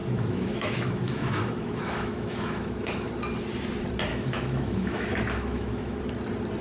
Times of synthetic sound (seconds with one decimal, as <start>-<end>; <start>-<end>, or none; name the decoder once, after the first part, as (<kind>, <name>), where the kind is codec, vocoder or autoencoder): 0.0-3.1 (autoencoder, DAC-VAE); 4.1-6.0